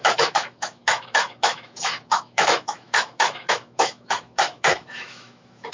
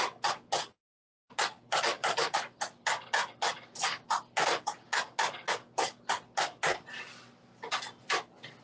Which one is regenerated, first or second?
first